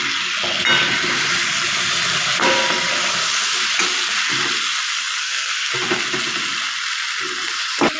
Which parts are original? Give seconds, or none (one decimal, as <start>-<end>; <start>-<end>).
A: 0.0-5.2; 5.7-8.0